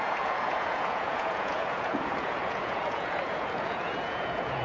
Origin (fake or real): fake